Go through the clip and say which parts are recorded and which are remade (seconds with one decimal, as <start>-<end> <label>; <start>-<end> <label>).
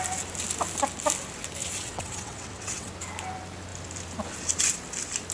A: 0.0-1.6 recorded; 1.6-2.9 remade; 2.9-5.3 recorded